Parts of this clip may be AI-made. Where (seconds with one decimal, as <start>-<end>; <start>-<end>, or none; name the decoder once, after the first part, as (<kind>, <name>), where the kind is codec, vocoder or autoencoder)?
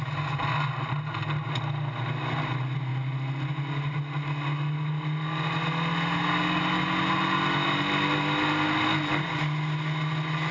none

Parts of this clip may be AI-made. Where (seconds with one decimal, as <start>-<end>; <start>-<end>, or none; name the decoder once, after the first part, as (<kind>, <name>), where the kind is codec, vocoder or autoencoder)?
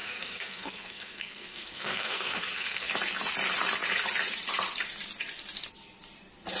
0.0-2.9 (codec, SNAC)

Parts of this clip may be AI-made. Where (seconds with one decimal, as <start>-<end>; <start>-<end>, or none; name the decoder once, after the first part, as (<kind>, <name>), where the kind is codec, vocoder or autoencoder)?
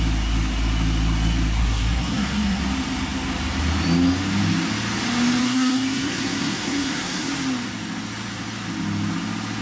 1.6-2.6 (codec, SNAC); 5.4-7.3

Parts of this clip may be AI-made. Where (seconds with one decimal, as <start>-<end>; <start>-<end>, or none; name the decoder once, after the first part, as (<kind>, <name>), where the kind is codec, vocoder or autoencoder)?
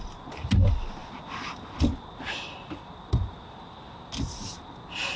none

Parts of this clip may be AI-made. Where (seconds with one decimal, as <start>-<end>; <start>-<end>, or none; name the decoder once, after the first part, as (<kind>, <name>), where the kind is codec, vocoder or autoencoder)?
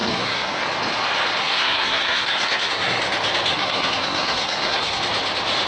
0.0-0.6 (codec, SNAC); 1.4-3.0; 3.5-5.0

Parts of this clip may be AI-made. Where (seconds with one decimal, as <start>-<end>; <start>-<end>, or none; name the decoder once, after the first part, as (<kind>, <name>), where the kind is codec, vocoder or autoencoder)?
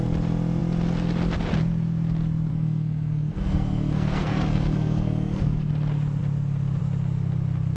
2.5-5.7 (codec, SNAC)